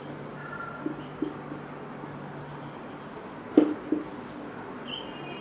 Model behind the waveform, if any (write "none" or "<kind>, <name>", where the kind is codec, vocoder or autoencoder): vocoder, BigVGAN v2